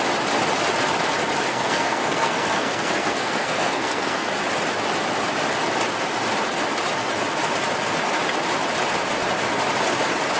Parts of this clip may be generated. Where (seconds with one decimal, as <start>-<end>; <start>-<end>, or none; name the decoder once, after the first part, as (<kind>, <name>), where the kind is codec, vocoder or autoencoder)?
1.5-4.3 (codec, SNAC)